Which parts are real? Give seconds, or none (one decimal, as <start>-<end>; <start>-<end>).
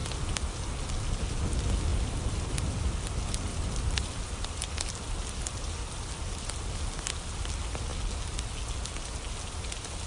0.7-1.9; 2.4-3.5; 6.6-10.1